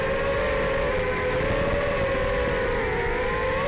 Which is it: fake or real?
real